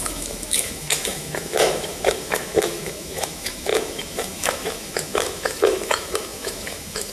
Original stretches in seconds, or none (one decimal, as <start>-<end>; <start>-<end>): none